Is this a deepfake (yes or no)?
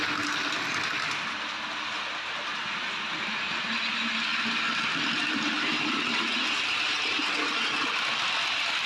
no